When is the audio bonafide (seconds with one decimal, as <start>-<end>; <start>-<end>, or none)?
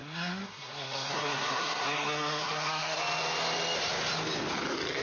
3.0-5.0